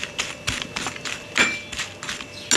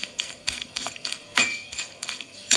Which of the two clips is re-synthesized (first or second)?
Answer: second